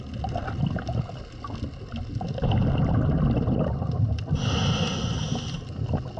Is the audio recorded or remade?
recorded